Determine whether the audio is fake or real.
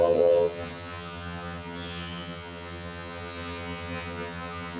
fake